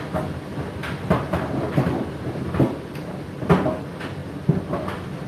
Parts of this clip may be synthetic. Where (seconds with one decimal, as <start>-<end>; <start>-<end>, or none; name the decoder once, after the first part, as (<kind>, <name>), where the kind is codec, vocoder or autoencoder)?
0.8-2.6 (vocoder, BigVGAN v2)